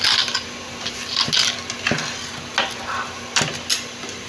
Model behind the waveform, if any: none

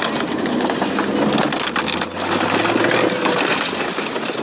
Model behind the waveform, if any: none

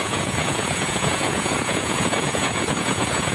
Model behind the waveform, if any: vocoder, Vocos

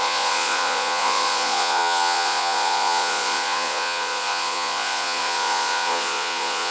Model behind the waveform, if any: vocoder, Vocos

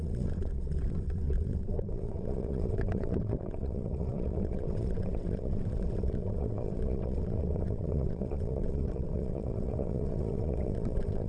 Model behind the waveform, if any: vocoder, WaveNeXt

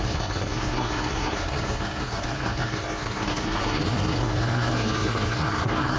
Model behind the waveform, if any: codec, SNAC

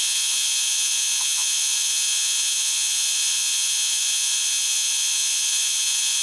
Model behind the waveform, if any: vocoder, Vocos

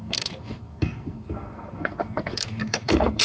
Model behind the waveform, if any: codec, SNAC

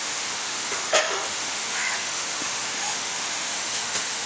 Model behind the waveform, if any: autoencoder, DAC-VAE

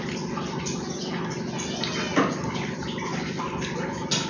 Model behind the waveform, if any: none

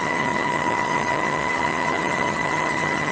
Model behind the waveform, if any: vocoder, HiFi-GAN